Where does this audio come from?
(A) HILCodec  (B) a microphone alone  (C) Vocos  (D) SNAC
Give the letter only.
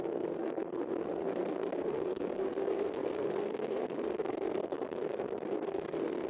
D